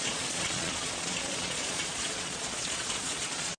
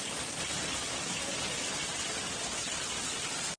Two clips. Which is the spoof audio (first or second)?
first